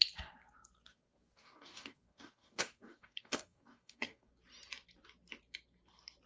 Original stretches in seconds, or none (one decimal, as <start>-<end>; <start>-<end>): 0.0-0.9; 4.3-6.3